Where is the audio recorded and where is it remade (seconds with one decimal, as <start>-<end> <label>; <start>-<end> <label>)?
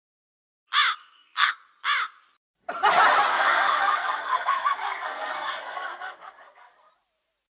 0.0-1.0 recorded; 1.0-1.5 remade; 1.5-3.3 recorded; 3.3-6.9 remade; 6.9-7.5 recorded